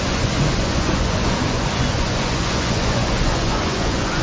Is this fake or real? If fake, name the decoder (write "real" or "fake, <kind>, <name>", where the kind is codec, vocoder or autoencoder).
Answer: fake, vocoder, Vocos